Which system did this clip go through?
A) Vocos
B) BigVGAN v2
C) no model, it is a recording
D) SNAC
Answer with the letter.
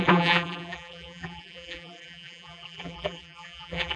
B